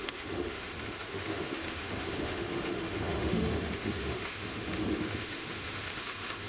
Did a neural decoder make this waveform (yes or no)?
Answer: yes